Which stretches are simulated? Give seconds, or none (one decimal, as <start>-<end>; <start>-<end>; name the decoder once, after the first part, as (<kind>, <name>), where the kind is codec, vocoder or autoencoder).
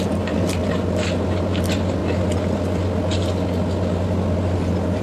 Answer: none